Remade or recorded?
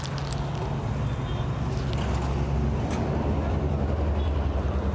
recorded